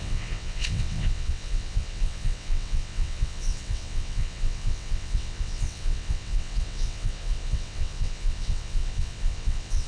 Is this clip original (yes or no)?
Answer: no